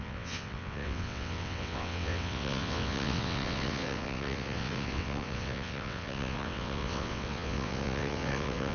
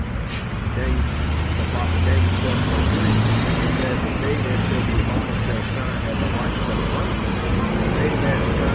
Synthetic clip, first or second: first